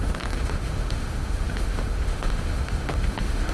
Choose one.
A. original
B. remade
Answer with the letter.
B